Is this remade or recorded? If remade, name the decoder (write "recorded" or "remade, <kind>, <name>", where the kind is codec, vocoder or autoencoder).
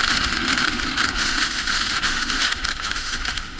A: remade, autoencoder, DAC-VAE